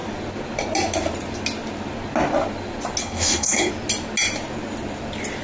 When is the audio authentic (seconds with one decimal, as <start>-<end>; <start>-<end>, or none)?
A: 0.0-3.0; 3.7-5.4